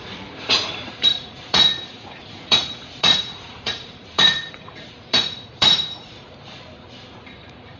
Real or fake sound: fake